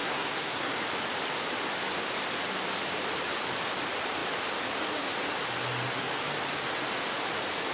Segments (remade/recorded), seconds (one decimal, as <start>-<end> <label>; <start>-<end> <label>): 0.0-0.8 remade; 0.8-7.7 recorded